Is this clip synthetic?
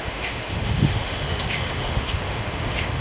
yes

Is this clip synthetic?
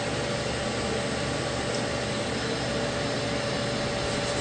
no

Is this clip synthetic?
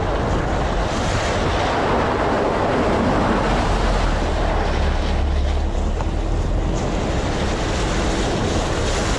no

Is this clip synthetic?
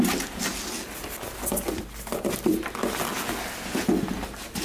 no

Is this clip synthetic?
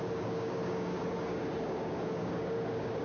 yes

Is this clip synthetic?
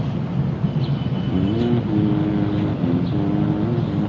no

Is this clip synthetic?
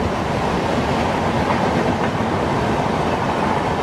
no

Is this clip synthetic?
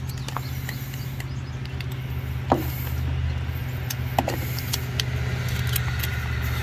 no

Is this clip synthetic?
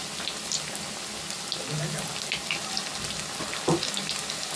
no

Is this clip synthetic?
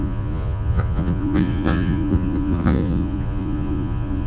yes